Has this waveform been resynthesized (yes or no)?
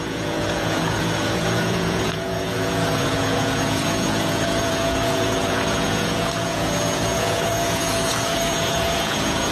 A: yes